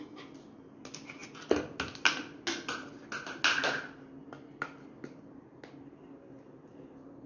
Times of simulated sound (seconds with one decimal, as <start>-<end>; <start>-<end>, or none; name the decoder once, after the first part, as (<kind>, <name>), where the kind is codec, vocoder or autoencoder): none